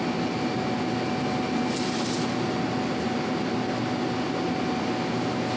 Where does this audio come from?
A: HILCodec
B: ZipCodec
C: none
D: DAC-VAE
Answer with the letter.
C